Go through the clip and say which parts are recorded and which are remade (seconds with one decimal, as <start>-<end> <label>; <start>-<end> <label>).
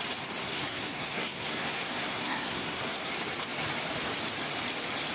0.0-0.4 recorded; 0.4-3.1 remade; 3.1-5.1 recorded